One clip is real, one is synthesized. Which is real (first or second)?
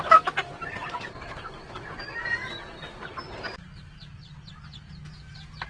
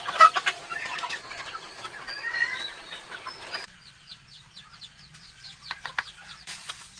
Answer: first